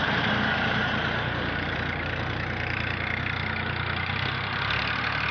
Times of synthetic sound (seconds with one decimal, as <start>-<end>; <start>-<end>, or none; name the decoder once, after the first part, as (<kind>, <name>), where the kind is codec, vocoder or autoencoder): 0.0-3.2 (vocoder, BigVGAN v2)